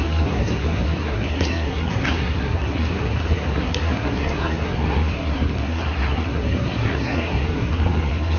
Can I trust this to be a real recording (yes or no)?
no